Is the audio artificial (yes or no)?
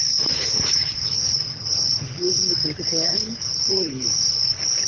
yes